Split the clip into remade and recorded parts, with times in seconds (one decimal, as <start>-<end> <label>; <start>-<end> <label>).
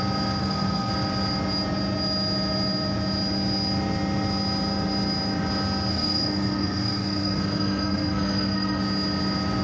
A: 0.0-0.4 recorded; 0.4-0.9 remade; 0.9-5.9 recorded; 5.9-8.8 remade; 8.8-9.6 recorded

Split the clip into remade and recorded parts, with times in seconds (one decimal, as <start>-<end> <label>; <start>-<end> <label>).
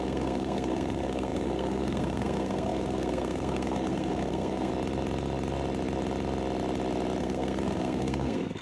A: 0.0-4.7 remade; 4.7-7.2 recorded; 7.2-8.6 remade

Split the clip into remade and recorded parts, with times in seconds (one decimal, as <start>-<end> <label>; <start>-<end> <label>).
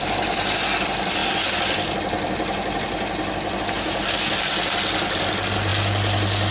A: 0.0-6.5 recorded